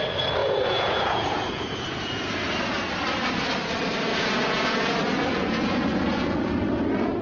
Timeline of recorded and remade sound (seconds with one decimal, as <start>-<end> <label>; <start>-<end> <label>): 0.0-0.4 recorded; 0.4-2.3 remade; 2.3-4.1 recorded; 4.1-6.5 remade; 6.5-7.2 recorded